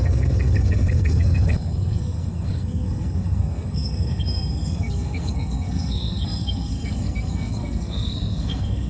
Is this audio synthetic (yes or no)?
yes